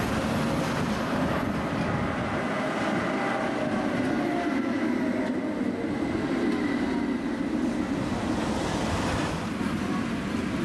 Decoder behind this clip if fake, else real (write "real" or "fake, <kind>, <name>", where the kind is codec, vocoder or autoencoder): real